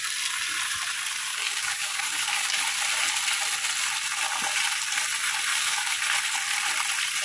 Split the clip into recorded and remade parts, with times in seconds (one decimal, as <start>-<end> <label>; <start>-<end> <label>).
0.0-1.3 recorded; 1.3-2.6 remade; 2.6-5.5 recorded; 5.5-6.0 remade; 6.0-7.2 recorded